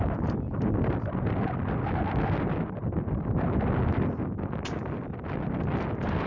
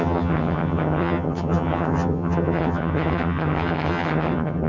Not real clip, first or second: second